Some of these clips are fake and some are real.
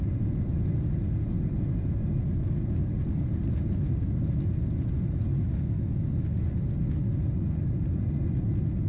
real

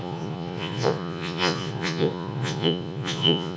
fake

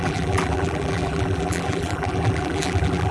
fake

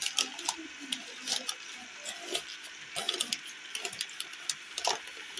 real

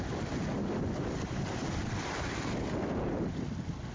real